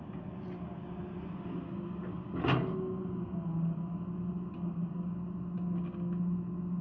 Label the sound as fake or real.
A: real